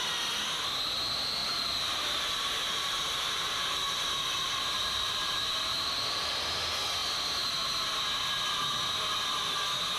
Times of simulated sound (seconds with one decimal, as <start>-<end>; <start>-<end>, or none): 1.4-6.4